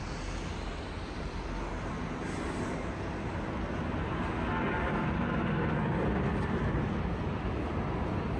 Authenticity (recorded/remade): recorded